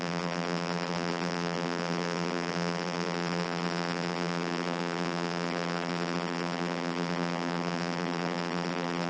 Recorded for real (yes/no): no